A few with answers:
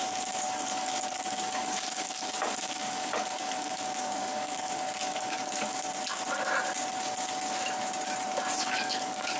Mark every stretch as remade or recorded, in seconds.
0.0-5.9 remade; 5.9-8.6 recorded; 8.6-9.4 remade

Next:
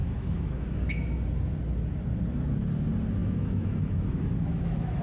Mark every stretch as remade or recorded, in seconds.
0.0-1.1 remade; 1.1-3.2 recorded; 3.2-5.0 remade

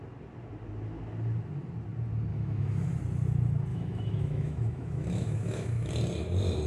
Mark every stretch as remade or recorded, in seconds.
0.0-2.3 recorded; 2.3-3.0 remade; 3.0-3.7 recorded; 3.7-5.9 remade; 5.9-6.7 recorded